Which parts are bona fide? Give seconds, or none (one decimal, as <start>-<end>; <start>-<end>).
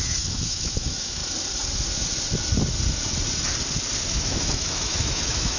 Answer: 1.2-4.1